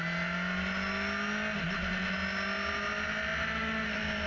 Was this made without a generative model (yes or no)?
yes